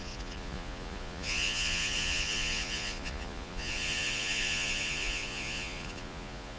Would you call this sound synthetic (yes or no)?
yes